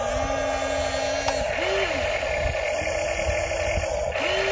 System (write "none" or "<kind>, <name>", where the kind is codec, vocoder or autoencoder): none